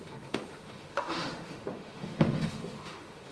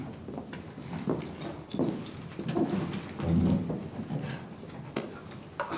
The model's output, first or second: first